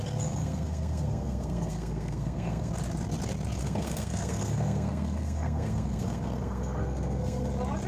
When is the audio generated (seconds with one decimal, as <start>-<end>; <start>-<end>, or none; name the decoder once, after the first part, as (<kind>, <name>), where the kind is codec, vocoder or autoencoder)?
0.4-2.7 (codec, SNAC); 3.6-7.5